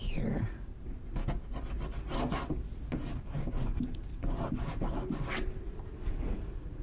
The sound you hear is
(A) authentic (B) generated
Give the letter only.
A